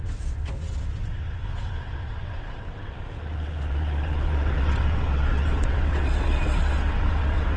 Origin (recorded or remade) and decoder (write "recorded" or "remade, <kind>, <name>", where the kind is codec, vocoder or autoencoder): remade, vocoder, WaveNeXt